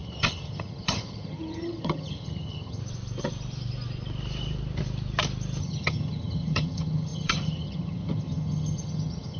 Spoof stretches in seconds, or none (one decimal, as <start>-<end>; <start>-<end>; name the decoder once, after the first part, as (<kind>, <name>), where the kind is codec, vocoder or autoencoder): 0.0-2.8 (vocoder, HiFi-GAN); 5.6-9.4

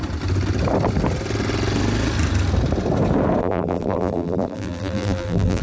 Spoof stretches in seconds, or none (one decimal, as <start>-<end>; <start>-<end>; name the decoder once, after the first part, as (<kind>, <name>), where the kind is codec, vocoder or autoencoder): 3.4-5.6 (vocoder, BigVGAN v2)

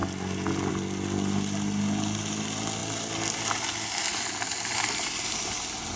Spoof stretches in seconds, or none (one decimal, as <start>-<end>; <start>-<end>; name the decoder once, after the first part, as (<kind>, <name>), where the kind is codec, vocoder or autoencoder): none

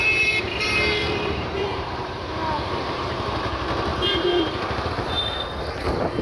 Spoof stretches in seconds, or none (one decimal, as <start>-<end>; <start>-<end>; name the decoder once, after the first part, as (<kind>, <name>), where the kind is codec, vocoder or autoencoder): 1.0-3.5 (vocoder, BigVGAN v2); 3.9-4.9

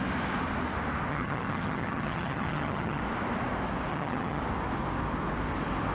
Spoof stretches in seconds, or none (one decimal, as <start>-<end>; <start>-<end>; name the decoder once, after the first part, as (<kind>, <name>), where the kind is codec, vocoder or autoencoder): 1.1-3.0 (vocoder, HiFi-GAN); 3.9-4.4